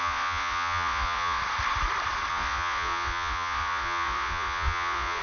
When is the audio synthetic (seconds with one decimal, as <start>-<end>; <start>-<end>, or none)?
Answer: 0.0-1.4; 2.3-5.2